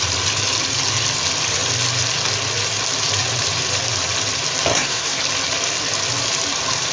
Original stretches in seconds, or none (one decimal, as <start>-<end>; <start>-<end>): 0.0-4.7; 5.2-6.9